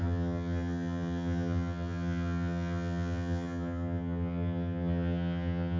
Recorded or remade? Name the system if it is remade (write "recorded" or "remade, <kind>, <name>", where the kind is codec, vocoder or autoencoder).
remade, vocoder, HiFi-GAN